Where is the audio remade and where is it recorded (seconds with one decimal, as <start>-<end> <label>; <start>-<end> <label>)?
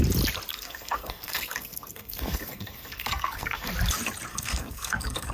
0.0-0.5 recorded; 0.5-3.7 remade; 3.7-4.3 recorded; 4.3-5.3 remade